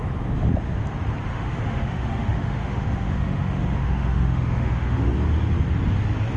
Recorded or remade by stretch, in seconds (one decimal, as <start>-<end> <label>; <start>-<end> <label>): 0.0-1.3 recorded; 1.3-5.1 remade; 5.1-6.4 recorded

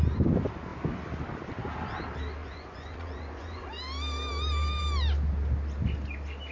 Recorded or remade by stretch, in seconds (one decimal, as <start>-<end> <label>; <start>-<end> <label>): 0.0-2.4 recorded; 2.4-3.7 remade; 3.7-6.5 recorded

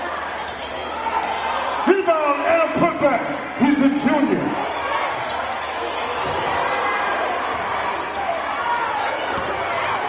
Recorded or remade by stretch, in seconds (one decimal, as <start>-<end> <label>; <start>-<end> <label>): 0.0-10.1 recorded

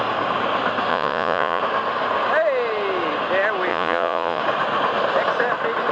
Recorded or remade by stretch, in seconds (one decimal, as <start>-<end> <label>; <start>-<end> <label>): 0.0-0.9 recorded; 0.9-1.6 remade; 1.6-3.7 recorded; 3.7-4.4 remade; 4.4-5.9 recorded

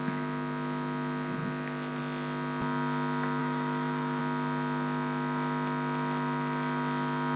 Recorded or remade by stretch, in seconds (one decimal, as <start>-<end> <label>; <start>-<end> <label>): 0.0-3.4 recorded; 3.4-4.2 remade; 4.2-7.4 recorded

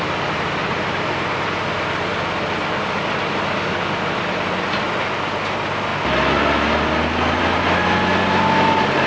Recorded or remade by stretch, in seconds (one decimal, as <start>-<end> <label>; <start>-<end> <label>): 0.0-0.6 recorded; 0.6-1.2 remade; 1.2-9.1 recorded

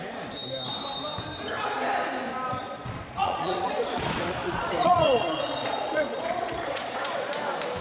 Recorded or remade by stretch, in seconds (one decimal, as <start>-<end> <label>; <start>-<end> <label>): 0.0-2.6 recorded; 2.6-7.3 remade; 7.3-7.8 recorded